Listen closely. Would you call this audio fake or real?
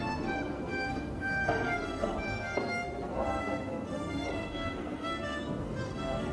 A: fake